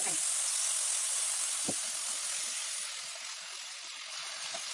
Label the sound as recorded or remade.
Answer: recorded